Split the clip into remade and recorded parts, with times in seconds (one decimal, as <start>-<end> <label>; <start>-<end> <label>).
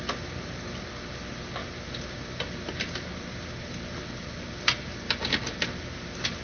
0.0-6.4 recorded